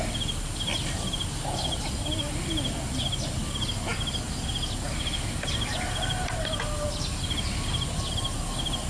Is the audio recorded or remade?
recorded